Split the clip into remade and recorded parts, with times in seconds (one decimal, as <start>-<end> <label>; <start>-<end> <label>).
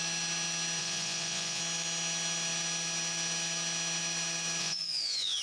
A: 0.0-0.8 recorded; 0.8-1.6 remade; 1.6-4.6 recorded; 4.6-5.4 remade